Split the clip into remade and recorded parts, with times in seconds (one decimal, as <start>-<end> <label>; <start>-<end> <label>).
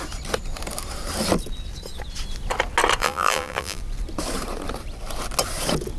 0.0-3.0 recorded; 3.0-3.8 remade; 3.8-6.0 recorded